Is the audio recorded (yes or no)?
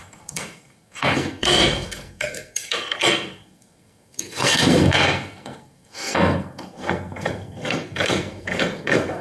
no